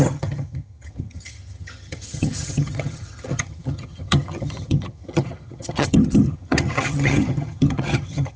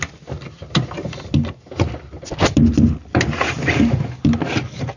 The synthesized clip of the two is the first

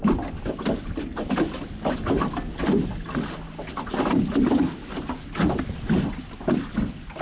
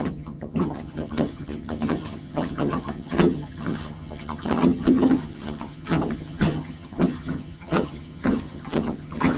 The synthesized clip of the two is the second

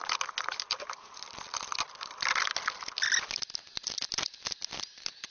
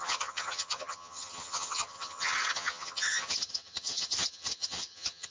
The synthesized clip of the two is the second